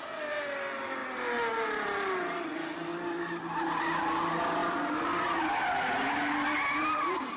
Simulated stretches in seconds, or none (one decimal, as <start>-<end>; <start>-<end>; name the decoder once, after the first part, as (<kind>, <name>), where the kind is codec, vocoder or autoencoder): none